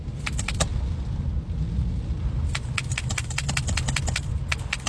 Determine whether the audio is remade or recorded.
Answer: recorded